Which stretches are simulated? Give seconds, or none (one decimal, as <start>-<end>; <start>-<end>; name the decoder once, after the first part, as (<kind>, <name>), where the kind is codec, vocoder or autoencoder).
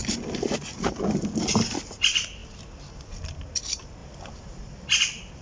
none